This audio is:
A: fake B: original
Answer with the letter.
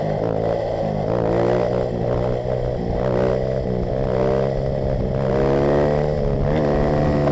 B